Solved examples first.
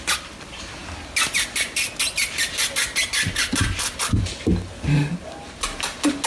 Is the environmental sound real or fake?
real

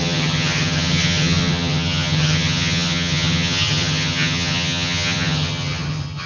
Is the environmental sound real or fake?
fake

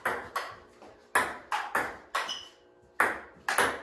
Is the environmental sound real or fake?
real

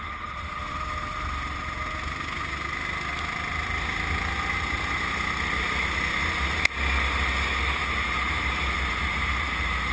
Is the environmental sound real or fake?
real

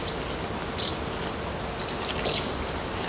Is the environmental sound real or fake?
real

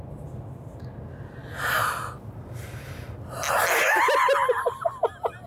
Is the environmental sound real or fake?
real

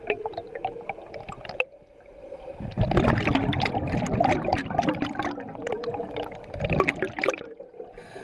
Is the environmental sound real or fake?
real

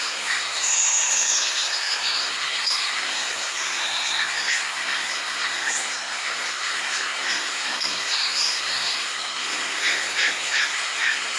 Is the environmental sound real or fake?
fake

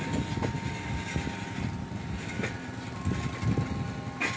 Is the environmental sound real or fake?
real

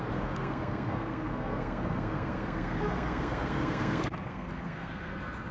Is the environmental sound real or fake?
fake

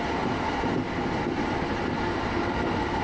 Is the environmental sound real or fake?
real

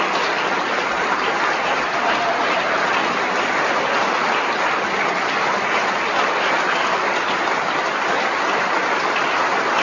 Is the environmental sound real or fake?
fake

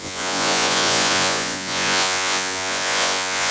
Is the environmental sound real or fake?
fake